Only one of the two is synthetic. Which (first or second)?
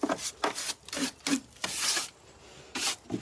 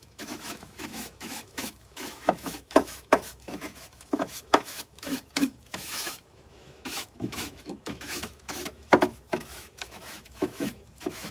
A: second